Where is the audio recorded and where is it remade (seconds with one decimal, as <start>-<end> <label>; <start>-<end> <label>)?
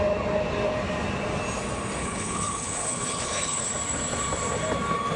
0.0-2.0 recorded; 2.0-3.7 remade; 3.7-5.2 recorded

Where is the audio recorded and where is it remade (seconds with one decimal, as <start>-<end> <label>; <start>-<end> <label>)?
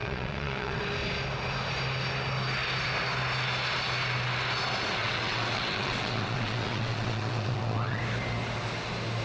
0.0-0.8 remade; 0.8-5.0 recorded; 5.0-8.0 remade; 8.0-9.2 recorded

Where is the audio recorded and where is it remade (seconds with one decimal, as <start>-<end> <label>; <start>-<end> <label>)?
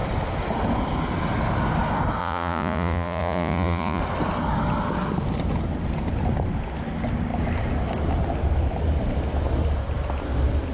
0.0-2.2 recorded; 2.2-4.0 remade; 4.0-10.7 recorded